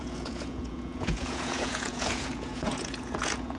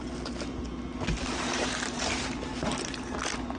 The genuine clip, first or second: second